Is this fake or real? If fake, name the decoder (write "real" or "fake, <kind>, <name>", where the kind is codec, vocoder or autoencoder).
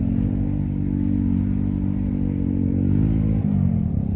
real